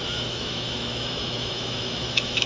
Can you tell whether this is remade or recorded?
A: remade